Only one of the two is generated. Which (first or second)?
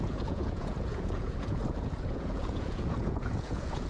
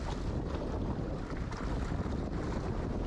first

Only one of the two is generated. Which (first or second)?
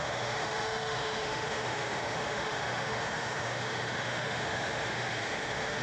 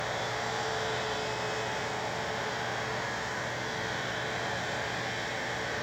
first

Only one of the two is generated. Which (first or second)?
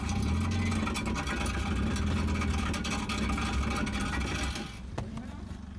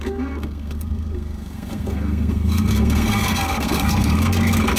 second